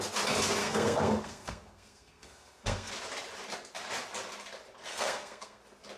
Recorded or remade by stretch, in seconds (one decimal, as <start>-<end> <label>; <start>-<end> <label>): 0.0-0.6 recorded; 0.6-2.9 remade; 2.9-4.9 recorded; 4.9-5.6 remade; 5.6-6.0 recorded